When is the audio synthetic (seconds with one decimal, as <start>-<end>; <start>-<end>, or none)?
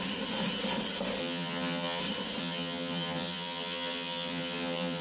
1.2-2.0; 2.4-5.0